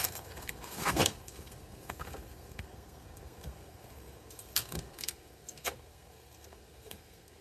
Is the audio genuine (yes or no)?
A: no